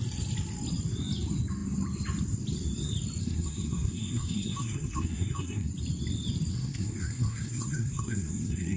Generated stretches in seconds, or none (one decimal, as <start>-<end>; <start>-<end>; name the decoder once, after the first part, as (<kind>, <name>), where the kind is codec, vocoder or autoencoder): 3.2-5.7 (codec, SNAC); 6.5-8.8